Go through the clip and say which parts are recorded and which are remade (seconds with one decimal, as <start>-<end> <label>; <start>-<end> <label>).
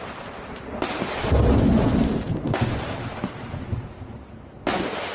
0.0-0.6 remade; 0.6-2.0 recorded; 2.0-4.6 remade; 4.6-5.1 recorded